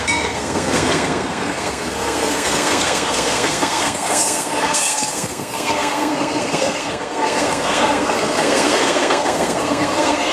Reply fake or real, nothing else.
fake